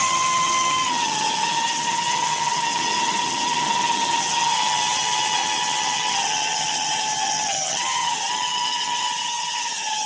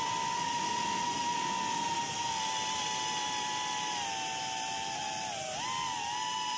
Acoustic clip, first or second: second